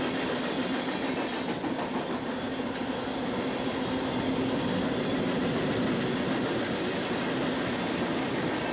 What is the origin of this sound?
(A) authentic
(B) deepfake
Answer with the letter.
A